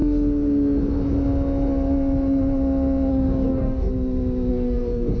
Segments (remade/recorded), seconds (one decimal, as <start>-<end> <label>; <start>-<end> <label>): 0.0-3.1 recorded; 3.1-3.9 remade; 3.9-4.5 recorded; 4.5-5.2 remade